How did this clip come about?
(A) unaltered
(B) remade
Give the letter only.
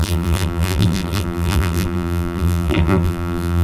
B